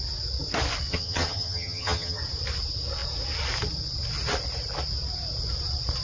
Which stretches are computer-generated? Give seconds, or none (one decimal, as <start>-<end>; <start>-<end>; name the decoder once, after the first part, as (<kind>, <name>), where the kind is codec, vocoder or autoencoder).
0.9-2.2 (vocoder, HiFi-GAN)